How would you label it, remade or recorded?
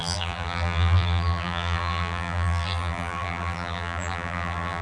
remade